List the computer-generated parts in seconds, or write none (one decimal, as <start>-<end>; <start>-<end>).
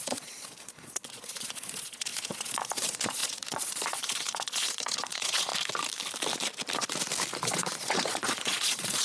0.0-5.5; 7.5-9.0